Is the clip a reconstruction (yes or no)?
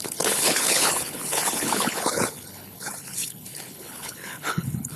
yes